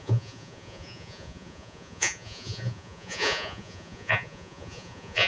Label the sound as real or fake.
fake